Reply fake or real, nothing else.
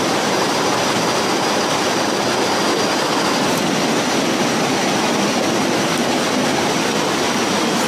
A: real